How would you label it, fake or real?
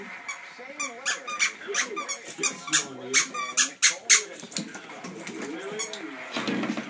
real